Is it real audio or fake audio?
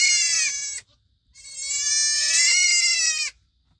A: real